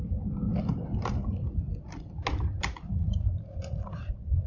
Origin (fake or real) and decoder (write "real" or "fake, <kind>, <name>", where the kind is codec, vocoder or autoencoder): real